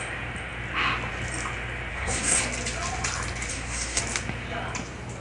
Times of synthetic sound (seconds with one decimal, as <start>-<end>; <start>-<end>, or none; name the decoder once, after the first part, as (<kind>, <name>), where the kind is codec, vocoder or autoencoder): 1.9-2.4 (codec, SNAC); 3.5-4.0